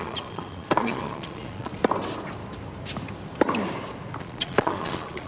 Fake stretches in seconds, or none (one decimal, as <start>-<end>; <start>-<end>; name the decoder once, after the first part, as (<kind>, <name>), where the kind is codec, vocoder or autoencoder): 0.0-1.7 (vocoder, Vocos); 4.2-5.3